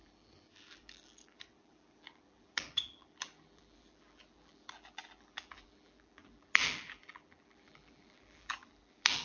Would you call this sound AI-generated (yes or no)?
yes